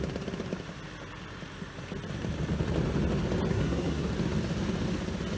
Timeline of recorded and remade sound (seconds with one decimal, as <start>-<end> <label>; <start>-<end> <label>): 0.0-3.5 recorded; 3.5-4.1 remade; 4.1-5.4 recorded